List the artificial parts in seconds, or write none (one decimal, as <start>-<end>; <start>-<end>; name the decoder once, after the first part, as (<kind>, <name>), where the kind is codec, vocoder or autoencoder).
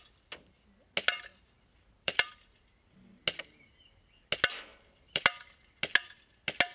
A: 1.3-2.3 (vocoder, BigVGAN v2); 4.7-5.2